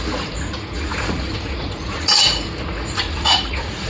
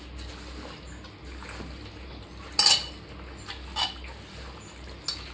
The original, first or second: second